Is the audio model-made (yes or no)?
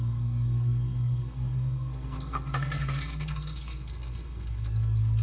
yes